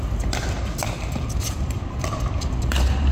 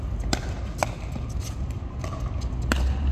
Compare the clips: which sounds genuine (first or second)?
second